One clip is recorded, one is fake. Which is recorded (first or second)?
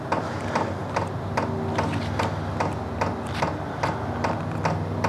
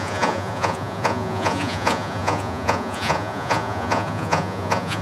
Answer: first